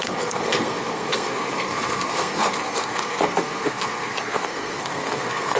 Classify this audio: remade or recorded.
remade